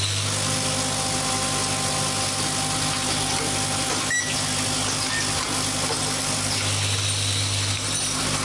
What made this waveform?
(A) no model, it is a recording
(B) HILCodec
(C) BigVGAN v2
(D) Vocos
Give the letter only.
A